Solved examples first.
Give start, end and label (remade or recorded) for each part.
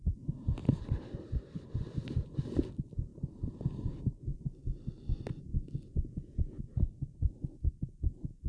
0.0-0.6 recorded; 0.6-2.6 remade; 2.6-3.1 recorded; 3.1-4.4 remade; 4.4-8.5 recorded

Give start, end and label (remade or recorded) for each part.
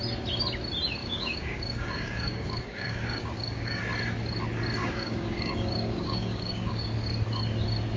0.0-1.0 recorded; 1.0-3.8 remade; 3.8-4.8 recorded; 4.8-6.8 remade; 6.8-8.0 recorded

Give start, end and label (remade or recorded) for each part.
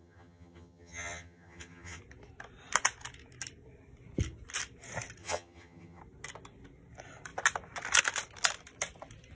0.0-2.0 remade; 2.0-5.2 recorded; 5.2-6.0 remade; 6.0-9.3 recorded